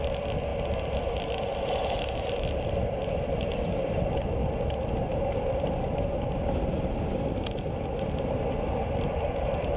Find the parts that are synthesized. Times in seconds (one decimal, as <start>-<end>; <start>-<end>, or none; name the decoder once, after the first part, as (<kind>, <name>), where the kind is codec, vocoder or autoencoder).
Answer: none